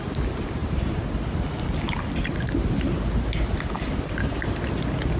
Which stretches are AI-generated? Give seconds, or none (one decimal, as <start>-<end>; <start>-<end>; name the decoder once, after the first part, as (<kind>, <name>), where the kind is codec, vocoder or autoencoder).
none